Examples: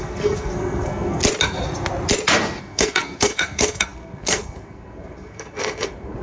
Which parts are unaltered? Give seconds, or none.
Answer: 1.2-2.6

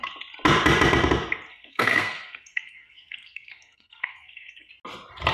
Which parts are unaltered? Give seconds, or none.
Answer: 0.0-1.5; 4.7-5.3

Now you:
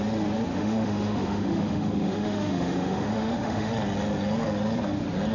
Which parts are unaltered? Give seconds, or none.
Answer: 0.0-0.5; 3.7-5.3

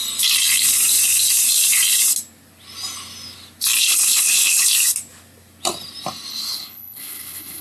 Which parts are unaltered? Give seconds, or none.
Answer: 0.0-3.8; 4.7-6.3

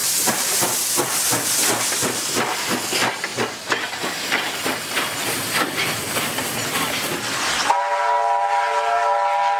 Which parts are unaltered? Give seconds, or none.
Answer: 0.5-9.6